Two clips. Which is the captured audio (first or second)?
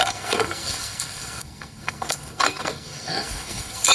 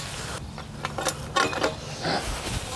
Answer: second